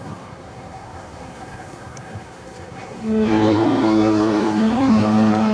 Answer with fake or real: fake